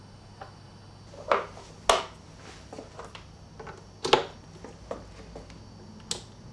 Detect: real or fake real